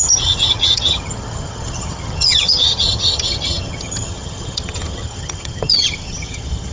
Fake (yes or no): yes